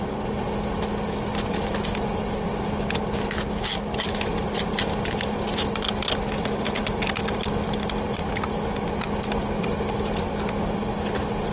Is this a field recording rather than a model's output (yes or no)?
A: yes